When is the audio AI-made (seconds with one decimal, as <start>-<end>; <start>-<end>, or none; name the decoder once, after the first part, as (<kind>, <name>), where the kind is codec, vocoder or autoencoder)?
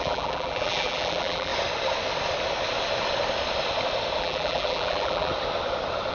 0.0-1.5 (vocoder, BigVGAN v2); 4.2-5.3